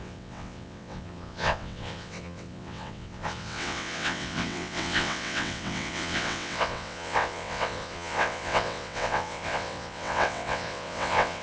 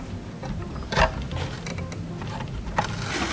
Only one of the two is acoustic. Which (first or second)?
second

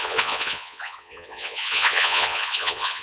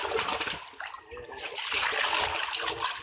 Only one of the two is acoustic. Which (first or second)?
second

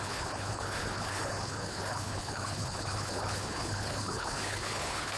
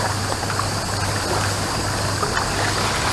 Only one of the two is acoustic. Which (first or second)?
second